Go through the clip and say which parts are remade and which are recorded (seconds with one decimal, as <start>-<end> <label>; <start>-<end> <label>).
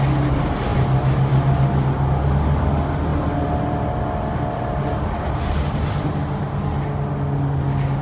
0.0-8.0 recorded